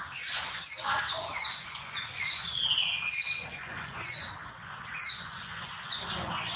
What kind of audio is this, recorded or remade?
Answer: remade